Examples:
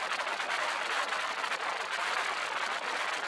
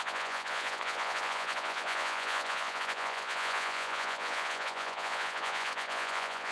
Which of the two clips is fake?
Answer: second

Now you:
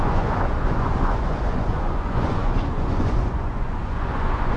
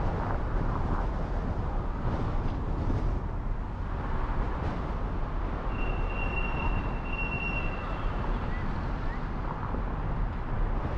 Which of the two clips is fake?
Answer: first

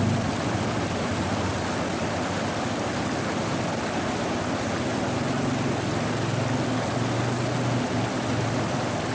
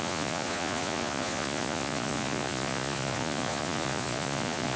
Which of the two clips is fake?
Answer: second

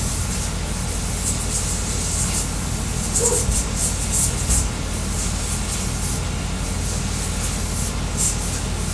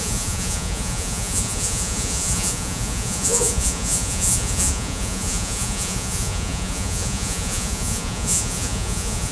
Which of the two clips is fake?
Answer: second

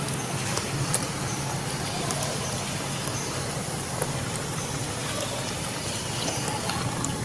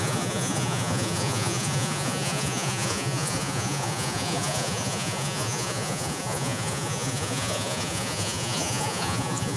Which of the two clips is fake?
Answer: second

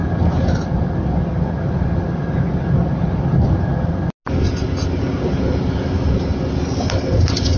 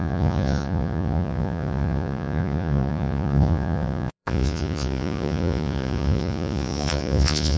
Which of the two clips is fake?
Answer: second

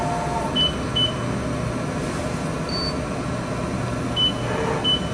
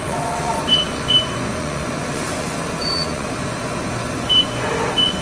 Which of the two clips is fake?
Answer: second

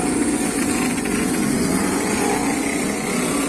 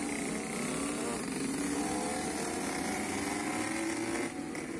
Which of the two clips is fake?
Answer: first